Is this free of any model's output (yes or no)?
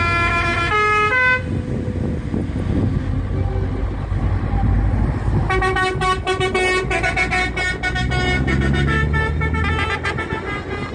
yes